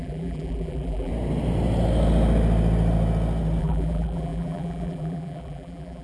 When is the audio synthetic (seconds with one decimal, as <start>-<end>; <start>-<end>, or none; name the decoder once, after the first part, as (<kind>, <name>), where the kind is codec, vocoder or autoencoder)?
0.0-1.1 (vocoder, BigVGAN v2); 3.6-6.0